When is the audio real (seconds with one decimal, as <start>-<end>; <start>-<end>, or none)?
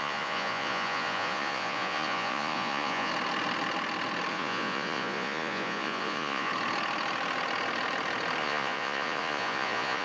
3.1-4.3; 6.5-8.4